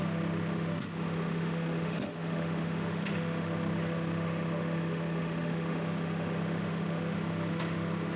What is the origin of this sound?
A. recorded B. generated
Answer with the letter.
B